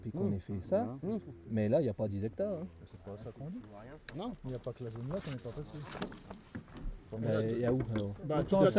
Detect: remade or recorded recorded